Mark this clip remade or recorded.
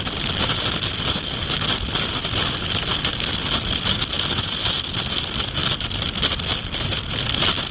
recorded